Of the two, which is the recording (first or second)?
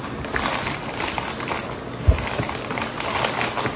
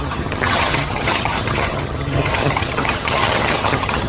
first